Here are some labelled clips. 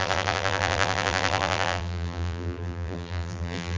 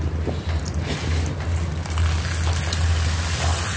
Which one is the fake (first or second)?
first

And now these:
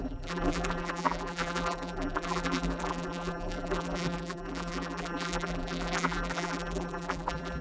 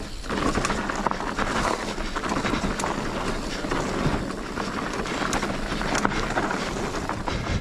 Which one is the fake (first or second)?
first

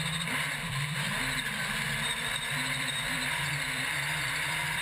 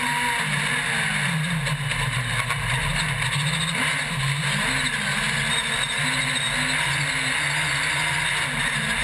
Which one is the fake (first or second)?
first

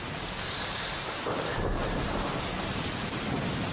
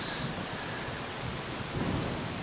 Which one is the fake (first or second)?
first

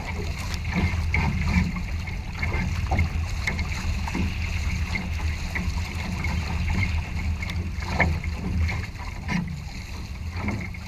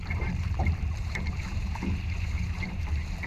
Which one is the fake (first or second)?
second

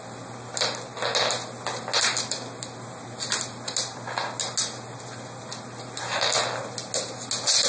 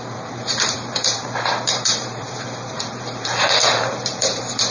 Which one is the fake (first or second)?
second